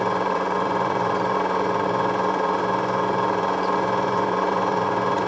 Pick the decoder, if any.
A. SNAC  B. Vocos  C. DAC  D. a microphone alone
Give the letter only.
B